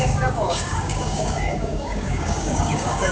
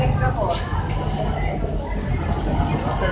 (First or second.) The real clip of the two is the second